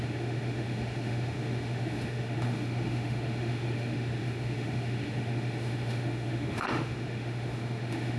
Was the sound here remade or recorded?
remade